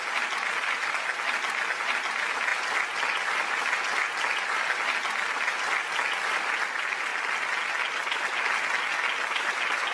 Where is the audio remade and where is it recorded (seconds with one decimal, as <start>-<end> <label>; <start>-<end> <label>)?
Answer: 0.0-9.9 recorded

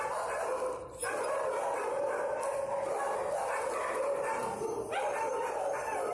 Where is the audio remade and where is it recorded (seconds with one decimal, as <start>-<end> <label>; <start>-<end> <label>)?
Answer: 0.0-6.1 recorded

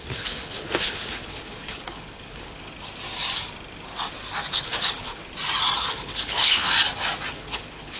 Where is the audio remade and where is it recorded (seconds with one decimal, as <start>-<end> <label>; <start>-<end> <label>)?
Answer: 0.0-2.7 remade; 2.7-4.5 recorded; 4.5-5.2 remade; 5.2-5.8 recorded; 5.8-6.7 remade; 6.7-7.3 recorded; 7.3-8.0 remade

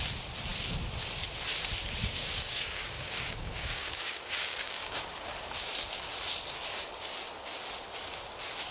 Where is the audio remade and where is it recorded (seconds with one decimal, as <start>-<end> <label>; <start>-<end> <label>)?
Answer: 0.0-2.0 recorded; 2.0-5.3 remade; 5.3-8.7 recorded

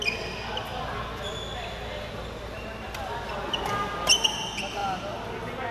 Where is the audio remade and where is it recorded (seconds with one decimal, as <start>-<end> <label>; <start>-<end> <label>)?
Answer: 0.0-5.7 recorded

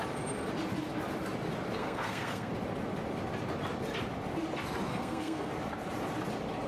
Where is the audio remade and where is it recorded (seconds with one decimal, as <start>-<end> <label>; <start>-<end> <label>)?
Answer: 0.0-1.8 recorded; 1.8-2.5 remade; 2.5-4.9 recorded; 4.9-5.5 remade; 5.5-6.7 recorded

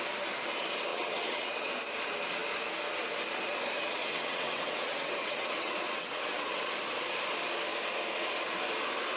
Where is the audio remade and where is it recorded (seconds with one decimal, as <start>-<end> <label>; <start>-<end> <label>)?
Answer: 0.0-0.9 recorded; 0.9-1.7 remade; 1.7-4.0 recorded; 4.0-6.7 remade; 6.7-9.2 recorded